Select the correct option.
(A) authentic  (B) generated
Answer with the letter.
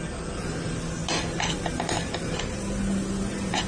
A